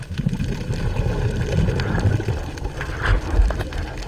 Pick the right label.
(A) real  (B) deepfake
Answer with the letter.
A